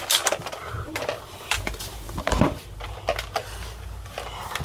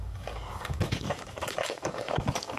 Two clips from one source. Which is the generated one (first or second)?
second